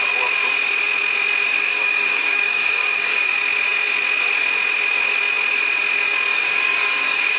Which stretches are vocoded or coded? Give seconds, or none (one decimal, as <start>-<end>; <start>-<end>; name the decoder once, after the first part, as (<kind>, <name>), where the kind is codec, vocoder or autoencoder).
1.5-3.3 (codec, DAC); 6.3-7.4